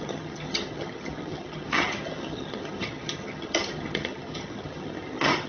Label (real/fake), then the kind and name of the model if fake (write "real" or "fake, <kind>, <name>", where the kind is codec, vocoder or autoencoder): fake, vocoder, HiFi-GAN